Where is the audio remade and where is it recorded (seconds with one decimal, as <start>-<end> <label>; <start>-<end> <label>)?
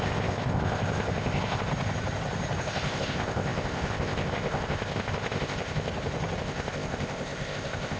0.0-1.7 remade; 1.7-2.6 recorded; 2.6-5.9 remade; 5.9-6.4 recorded; 6.4-8.0 remade